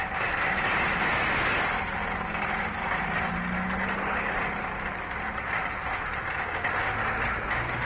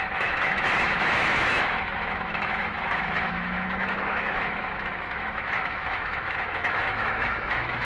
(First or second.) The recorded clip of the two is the first